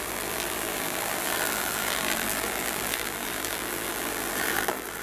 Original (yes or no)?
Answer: no